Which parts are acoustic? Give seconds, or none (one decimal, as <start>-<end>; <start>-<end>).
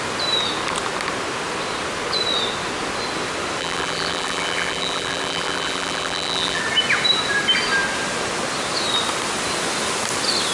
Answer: 0.0-3.6; 6.6-10.5